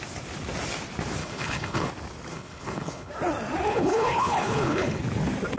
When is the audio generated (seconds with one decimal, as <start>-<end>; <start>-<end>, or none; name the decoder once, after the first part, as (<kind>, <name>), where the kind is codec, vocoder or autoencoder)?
1.2-1.9 (codec, HILCodec); 2.3-3.1; 3.7-5.0